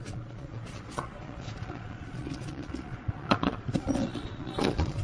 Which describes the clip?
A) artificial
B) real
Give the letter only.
A